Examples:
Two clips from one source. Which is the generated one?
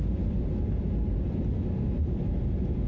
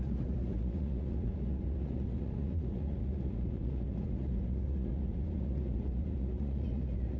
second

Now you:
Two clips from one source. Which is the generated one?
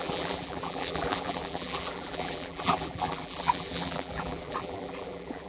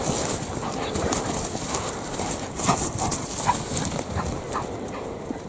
first